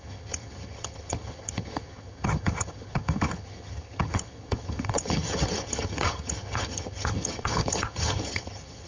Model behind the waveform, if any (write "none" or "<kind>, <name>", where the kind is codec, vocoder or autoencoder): vocoder, HiFi-GAN